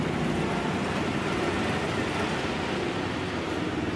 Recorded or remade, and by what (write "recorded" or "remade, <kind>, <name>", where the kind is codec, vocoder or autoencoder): recorded